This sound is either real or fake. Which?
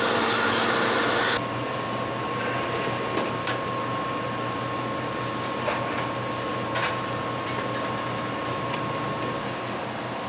real